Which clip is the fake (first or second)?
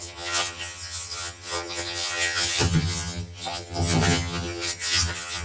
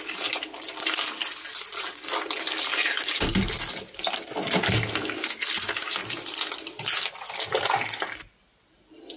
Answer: first